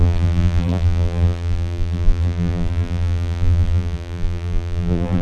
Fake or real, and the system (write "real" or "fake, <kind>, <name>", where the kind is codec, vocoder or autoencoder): fake, vocoder, BigVGAN v2